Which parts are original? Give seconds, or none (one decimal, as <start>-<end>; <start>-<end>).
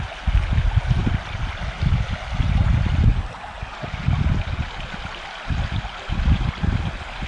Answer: 0.0-7.3